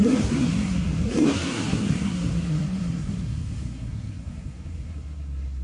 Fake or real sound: fake